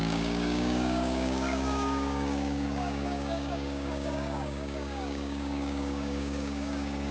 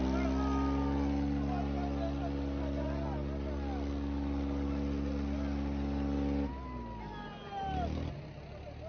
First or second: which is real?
second